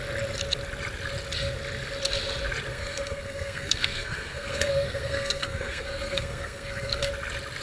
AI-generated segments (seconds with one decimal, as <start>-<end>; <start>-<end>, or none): 2.7-7.1